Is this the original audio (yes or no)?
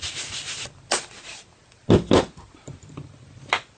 yes